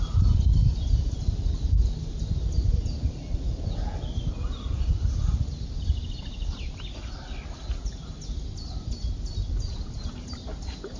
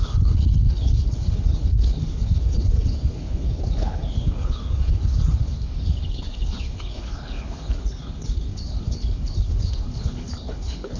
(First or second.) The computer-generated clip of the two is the second